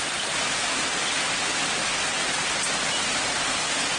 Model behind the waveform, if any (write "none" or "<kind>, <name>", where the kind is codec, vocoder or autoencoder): none